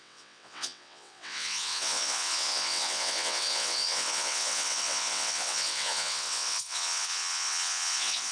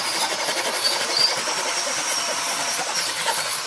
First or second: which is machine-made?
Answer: first